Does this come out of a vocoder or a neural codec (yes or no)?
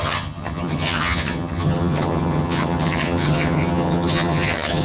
yes